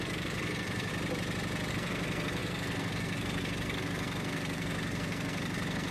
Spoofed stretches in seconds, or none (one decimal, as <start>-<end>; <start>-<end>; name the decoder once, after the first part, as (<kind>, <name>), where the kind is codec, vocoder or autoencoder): 0.0-0.9 (codec, SNAC); 1.7-5.9